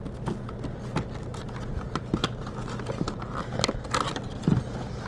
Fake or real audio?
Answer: real